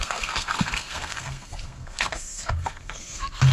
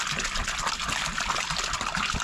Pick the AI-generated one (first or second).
first